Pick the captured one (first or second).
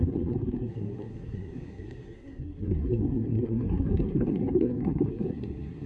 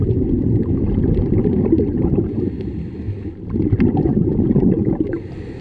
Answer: second